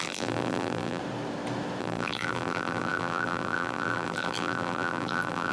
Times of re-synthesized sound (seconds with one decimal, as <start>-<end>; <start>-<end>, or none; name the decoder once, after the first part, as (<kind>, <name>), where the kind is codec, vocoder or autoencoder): 0.0-1.0 (vocoder, BigVGAN v2); 1.8-5.5